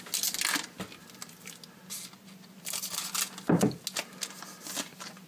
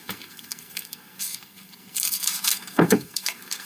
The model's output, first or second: second